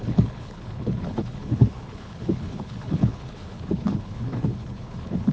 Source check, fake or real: fake